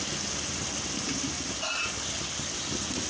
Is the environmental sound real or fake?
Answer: real